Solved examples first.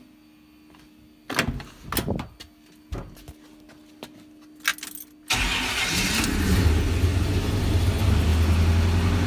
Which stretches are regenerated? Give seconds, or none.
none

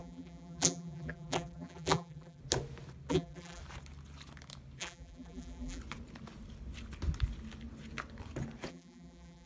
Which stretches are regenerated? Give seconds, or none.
0.0-2.4 (vocoder, BigVGAN v2); 3.1-3.6; 4.8-5.8; 8.7-9.5